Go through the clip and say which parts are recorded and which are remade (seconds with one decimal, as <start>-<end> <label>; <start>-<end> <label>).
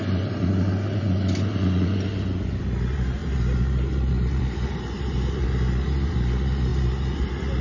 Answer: 0.0-7.6 recorded